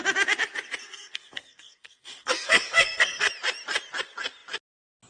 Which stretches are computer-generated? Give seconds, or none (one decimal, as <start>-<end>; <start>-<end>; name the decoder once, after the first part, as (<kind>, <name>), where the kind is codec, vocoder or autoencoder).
0.8-3.3 (codec, SNAC)